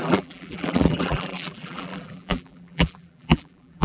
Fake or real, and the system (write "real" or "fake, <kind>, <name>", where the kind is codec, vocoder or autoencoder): fake, vocoder, BigVGAN v2